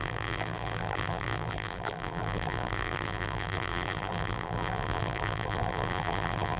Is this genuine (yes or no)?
no